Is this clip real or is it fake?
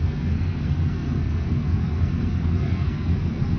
fake